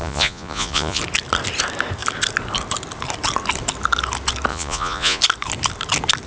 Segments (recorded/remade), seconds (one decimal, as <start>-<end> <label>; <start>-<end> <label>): 0.0-1.0 remade; 1.0-4.5 recorded; 4.5-5.2 remade; 5.2-6.3 recorded